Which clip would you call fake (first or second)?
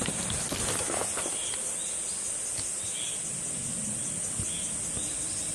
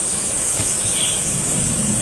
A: second